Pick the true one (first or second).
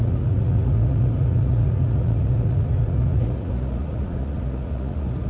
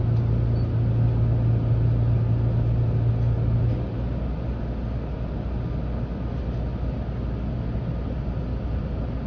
second